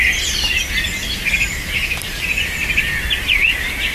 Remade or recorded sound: recorded